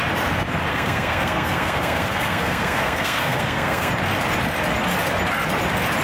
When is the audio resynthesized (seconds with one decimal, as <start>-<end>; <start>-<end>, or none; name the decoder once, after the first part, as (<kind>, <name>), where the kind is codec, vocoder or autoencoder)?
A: 0.7-3.9 (codec, SNAC)